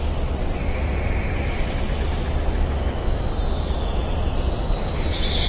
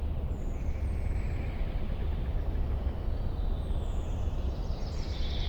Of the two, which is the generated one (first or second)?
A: second